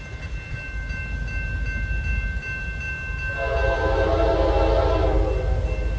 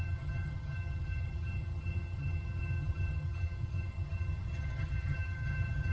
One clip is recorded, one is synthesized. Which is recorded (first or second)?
first